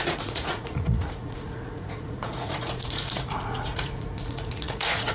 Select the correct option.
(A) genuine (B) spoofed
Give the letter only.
B